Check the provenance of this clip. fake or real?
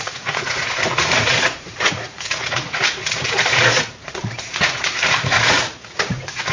fake